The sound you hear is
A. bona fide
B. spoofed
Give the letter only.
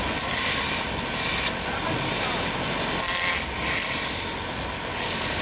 A